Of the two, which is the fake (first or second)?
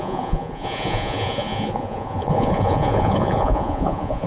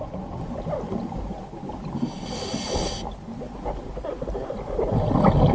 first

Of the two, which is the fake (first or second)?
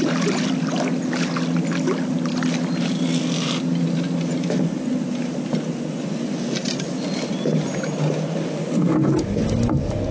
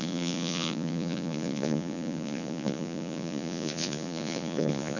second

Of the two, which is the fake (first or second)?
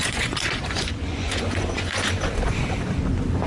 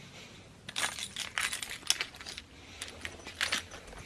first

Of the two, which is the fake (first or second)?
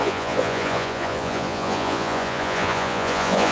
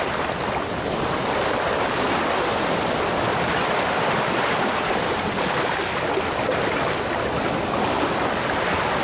first